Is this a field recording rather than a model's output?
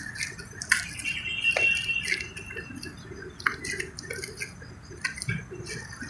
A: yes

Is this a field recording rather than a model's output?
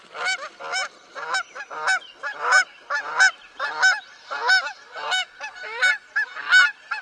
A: yes